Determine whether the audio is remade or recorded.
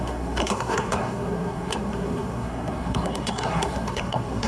remade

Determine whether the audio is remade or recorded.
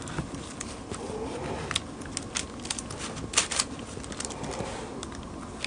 recorded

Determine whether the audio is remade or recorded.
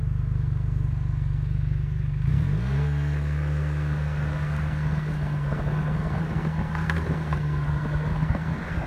remade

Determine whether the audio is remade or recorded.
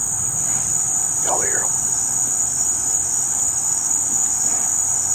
recorded